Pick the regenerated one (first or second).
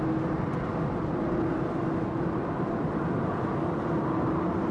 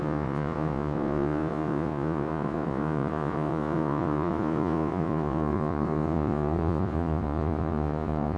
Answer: second